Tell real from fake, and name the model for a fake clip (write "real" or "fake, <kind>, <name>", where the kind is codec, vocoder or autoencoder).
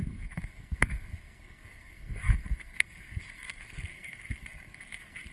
fake, codec, SNAC